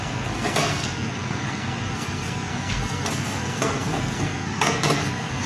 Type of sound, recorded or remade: remade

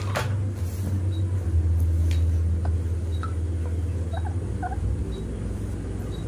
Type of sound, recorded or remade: recorded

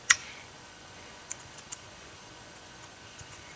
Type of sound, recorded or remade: remade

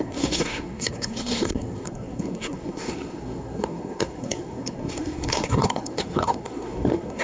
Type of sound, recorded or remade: remade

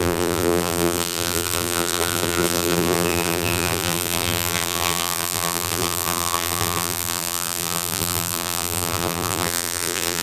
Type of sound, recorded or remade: remade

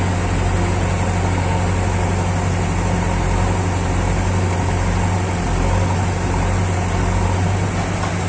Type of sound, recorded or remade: recorded